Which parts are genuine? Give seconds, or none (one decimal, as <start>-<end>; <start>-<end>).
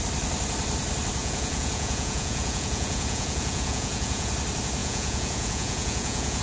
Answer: 0.0-1.2; 4.3-4.8